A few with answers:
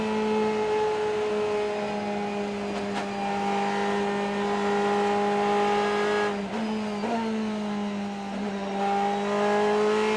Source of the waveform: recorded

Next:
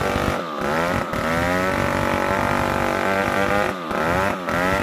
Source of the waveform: recorded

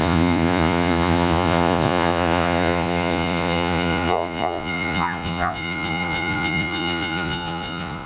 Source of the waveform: remade